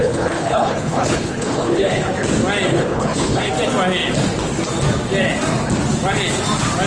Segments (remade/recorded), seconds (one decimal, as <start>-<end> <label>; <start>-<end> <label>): 0.0-2.1 remade; 2.1-2.7 recorded; 2.7-3.5 remade; 3.5-6.9 recorded